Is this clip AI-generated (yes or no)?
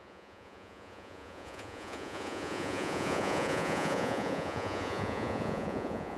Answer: yes